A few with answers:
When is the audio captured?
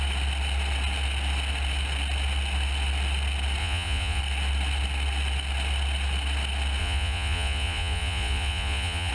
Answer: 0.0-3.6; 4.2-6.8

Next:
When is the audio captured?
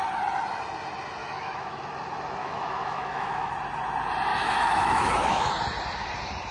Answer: 0.0-1.2; 1.8-2.4; 3.5-4.3; 5.5-6.5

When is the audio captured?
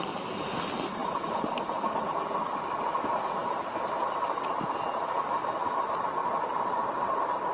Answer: 0.0-1.0; 1.6-3.4; 4.0-6.2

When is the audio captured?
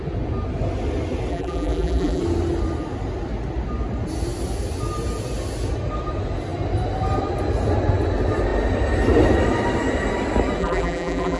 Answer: 0.0-1.3; 2.2-10.6